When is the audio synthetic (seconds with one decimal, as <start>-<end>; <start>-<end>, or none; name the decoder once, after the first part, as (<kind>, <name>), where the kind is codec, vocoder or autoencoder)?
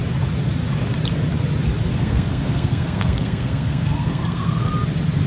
1.9-4.7 (codec, SNAC)